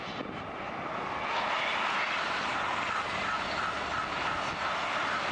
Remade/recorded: recorded